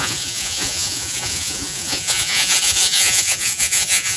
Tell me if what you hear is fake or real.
fake